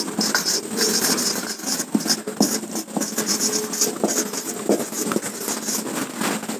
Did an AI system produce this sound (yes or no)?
no